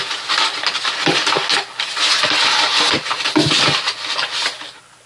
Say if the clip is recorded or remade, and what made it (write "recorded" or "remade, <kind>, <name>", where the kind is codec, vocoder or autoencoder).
recorded